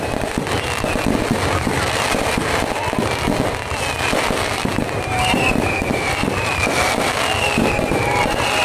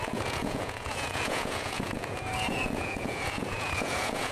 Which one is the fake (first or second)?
second